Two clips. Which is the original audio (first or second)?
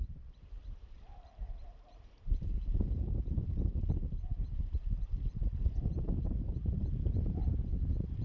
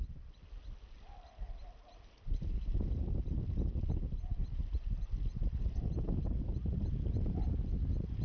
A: second